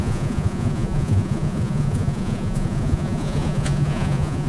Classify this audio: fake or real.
fake